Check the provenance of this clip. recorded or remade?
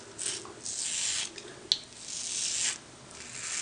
recorded